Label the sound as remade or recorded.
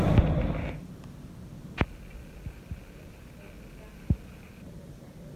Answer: recorded